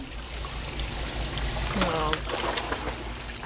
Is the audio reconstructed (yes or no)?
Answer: no